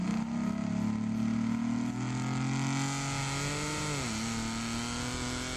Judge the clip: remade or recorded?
recorded